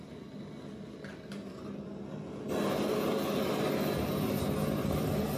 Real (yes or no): yes